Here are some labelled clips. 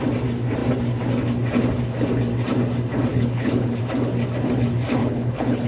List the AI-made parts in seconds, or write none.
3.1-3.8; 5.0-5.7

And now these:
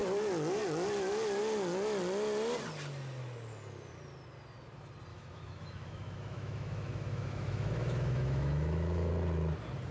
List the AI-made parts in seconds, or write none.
5.1-9.1

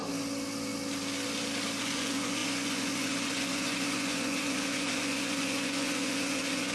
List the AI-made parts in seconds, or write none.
1.8-6.7

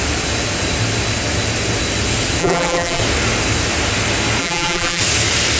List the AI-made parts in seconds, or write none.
2.4-3.0; 4.4-5.0

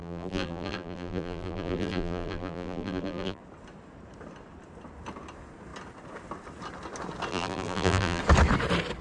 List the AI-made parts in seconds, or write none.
0.0-3.4; 7.3-8.2

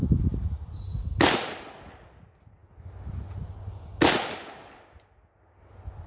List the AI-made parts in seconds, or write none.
none